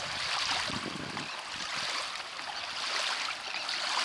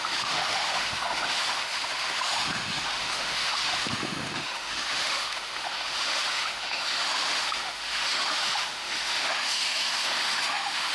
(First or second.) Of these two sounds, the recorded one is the first